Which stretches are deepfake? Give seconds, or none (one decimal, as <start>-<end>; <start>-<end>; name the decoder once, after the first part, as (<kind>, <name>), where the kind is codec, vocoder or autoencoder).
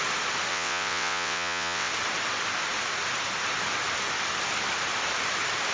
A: 0.5-1.9 (vocoder, WaveNeXt)